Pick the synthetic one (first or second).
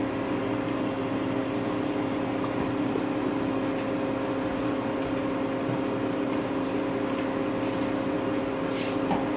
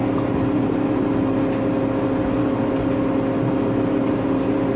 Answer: first